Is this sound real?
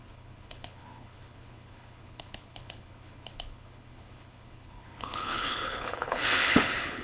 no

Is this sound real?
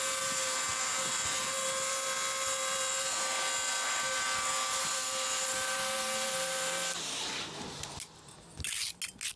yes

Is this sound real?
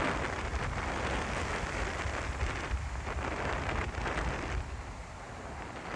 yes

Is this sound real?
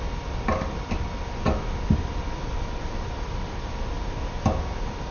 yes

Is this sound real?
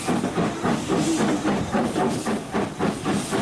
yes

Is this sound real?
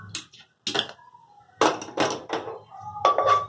yes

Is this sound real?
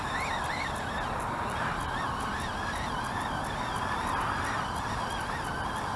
yes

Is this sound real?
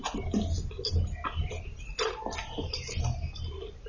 yes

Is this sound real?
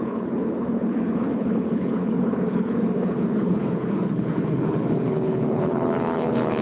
no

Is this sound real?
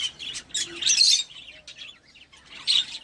yes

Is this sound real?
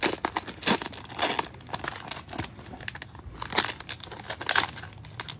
yes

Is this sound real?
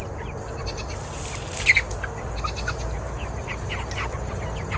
yes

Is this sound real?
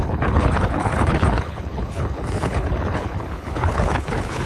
no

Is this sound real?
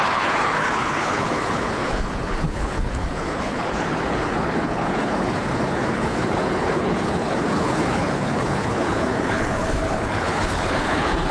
no